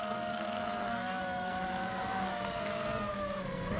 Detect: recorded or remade remade